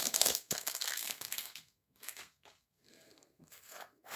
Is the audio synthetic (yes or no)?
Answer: yes